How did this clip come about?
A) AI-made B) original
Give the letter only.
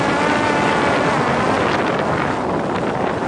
B